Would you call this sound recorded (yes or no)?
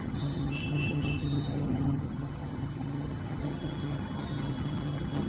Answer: no